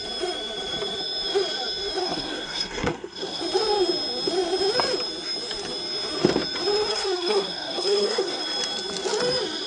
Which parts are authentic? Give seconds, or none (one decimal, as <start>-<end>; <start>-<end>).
0.0-2.0; 3.4-6.9; 8.4-9.7